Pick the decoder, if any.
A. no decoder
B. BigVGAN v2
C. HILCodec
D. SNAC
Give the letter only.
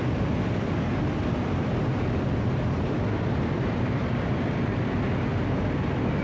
A